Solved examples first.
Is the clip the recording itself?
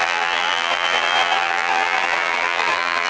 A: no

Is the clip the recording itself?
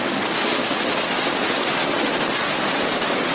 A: yes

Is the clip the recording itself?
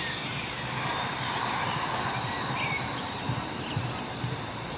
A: no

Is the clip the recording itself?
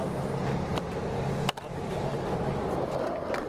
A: yes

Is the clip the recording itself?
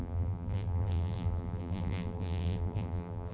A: no